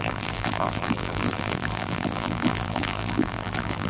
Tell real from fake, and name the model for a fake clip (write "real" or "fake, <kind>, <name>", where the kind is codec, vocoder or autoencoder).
fake, vocoder, BigVGAN v2